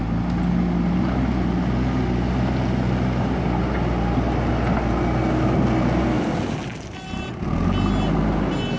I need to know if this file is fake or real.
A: real